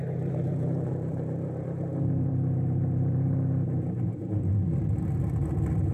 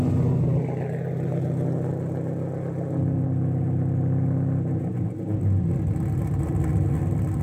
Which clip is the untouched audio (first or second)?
second